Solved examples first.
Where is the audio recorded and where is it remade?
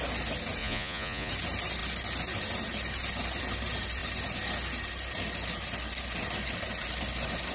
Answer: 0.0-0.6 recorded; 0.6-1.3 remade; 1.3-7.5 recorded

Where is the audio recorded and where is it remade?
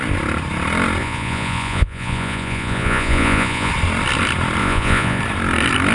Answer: 0.0-1.0 recorded; 1.0-3.7 remade; 3.7-4.6 recorded; 4.6-5.2 remade; 5.2-5.9 recorded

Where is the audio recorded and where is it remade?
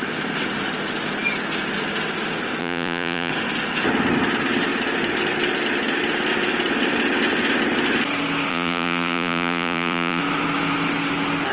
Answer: 0.0-2.6 recorded; 2.6-3.3 remade; 3.3-8.5 recorded; 8.5-10.2 remade; 10.2-11.5 recorded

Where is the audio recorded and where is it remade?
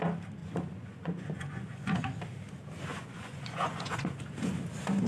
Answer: 0.0-0.4 recorded; 0.4-2.0 remade; 2.0-2.9 recorded; 2.9-4.2 remade; 4.2-5.1 recorded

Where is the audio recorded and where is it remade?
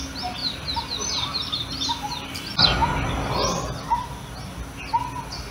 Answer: 0.0-5.5 recorded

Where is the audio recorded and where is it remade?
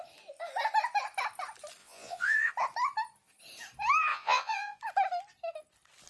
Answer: 0.0-1.8 recorded; 1.8-2.5 remade; 2.5-4.1 recorded; 4.1-4.8 remade; 4.8-6.1 recorded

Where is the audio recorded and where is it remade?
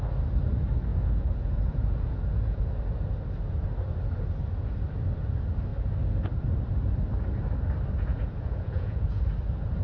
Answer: 0.0-0.9 recorded; 0.9-2.7 remade; 2.7-8.1 recorded; 8.1-9.2 remade; 9.2-9.8 recorded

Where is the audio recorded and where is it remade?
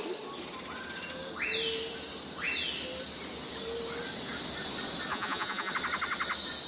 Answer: 0.0-5.1 recorded; 5.1-5.7 remade; 5.7-6.7 recorded